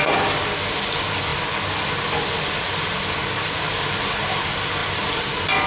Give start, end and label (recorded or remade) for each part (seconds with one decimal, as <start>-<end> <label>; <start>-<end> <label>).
0.0-5.7 recorded